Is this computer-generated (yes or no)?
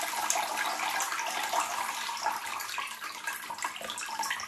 no